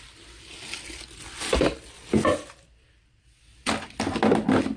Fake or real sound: real